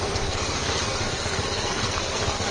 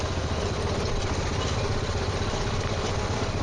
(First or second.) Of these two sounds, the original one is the second